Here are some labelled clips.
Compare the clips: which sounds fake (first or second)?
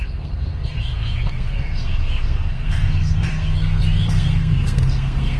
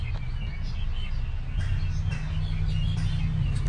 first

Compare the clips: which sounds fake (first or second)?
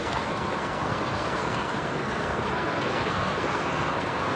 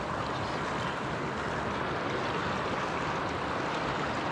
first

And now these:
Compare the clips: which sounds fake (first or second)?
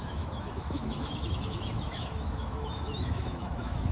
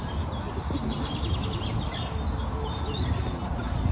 first